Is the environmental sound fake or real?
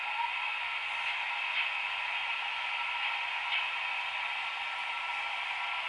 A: real